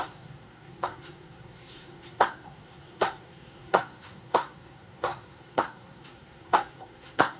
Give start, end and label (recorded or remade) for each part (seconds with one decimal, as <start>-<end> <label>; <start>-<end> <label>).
0.0-7.4 remade